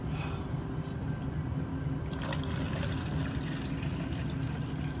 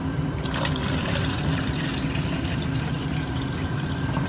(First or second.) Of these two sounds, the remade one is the second